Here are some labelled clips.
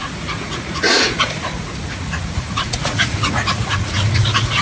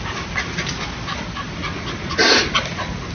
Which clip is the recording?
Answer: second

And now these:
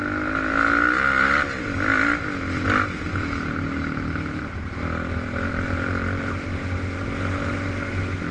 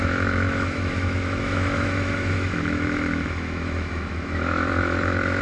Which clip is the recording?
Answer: first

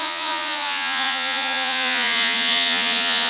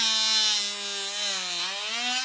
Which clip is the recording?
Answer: second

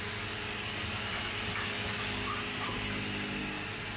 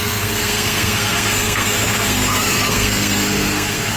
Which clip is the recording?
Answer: first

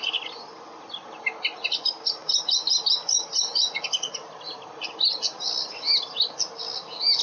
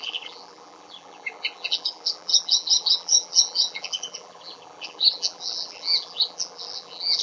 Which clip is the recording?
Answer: first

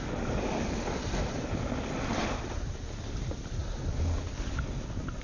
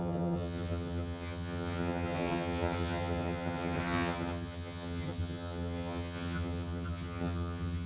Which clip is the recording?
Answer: first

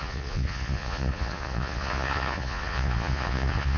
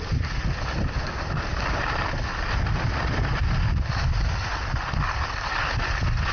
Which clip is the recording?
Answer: second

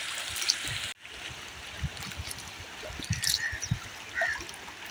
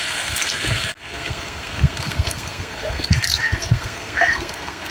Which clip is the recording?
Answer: first